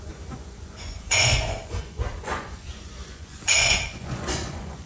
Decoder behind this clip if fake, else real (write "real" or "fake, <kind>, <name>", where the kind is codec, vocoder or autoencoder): fake, vocoder, Vocos